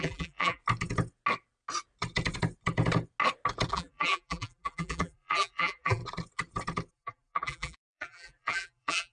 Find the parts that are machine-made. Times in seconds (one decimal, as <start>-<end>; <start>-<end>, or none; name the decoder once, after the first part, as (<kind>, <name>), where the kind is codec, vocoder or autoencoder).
0.0-0.6 (vocoder, BigVGAN v2); 3.7-6.0; 6.9-9.1